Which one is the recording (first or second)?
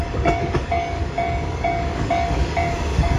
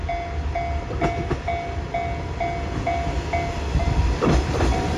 second